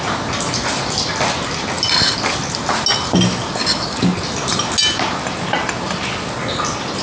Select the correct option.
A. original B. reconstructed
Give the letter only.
A